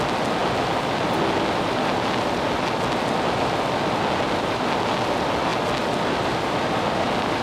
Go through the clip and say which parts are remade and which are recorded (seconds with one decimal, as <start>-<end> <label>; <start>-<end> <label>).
0.0-7.4 recorded

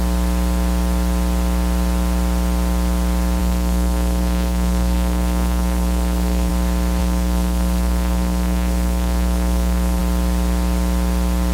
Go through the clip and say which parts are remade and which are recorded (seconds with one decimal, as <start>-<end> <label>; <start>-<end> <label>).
0.0-3.4 recorded; 3.4-6.5 remade; 6.5-7.0 recorded; 7.0-10.0 remade; 10.0-11.5 recorded